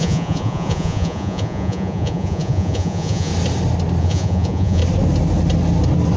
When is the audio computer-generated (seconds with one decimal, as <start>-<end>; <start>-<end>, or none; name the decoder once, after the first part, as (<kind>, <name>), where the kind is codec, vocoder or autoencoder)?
0.0-3.3 (vocoder, Vocos); 4.0-4.8

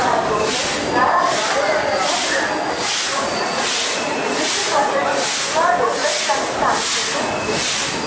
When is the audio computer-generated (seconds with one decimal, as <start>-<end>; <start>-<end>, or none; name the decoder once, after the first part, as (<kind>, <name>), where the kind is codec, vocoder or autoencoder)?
3.3-4.9 (vocoder, Vocos)

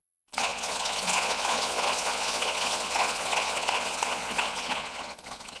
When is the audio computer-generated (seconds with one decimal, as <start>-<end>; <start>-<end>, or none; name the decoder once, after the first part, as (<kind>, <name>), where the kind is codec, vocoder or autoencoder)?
0.0-5.6 (vocoder, Vocos)